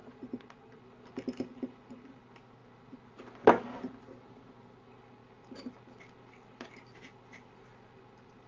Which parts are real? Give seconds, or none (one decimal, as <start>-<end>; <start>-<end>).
0.8-8.5